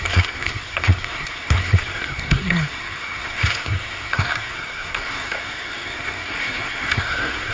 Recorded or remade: remade